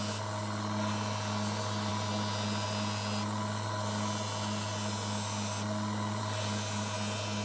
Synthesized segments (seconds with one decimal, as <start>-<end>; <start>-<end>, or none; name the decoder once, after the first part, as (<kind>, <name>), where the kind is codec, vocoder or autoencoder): none

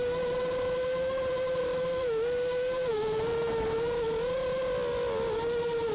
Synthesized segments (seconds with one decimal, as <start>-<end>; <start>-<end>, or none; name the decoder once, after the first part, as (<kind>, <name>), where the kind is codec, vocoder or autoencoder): none

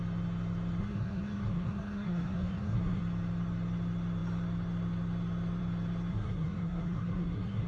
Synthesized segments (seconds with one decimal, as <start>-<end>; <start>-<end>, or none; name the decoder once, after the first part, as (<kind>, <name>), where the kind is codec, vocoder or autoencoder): 0.8-3.0 (codec, SNAC); 6.1-7.7

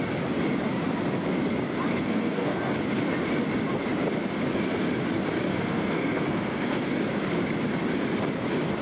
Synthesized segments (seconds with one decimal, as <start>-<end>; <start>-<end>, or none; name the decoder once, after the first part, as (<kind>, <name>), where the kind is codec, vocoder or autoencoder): 1.9-2.7 (codec, SNAC); 5.5-6.9

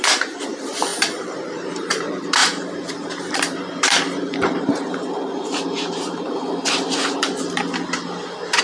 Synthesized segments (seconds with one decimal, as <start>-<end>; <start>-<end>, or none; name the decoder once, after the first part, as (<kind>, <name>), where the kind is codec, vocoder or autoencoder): 0.0-7.6 (vocoder, BigVGAN v2)